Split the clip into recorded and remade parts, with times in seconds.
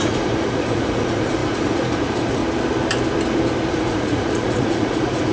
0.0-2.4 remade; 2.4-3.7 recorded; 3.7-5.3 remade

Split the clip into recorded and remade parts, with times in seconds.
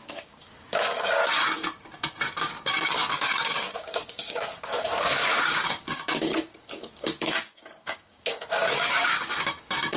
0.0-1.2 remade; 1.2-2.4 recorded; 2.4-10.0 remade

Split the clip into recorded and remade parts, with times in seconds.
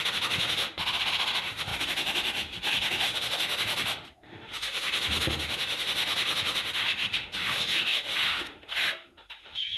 0.0-9.8 remade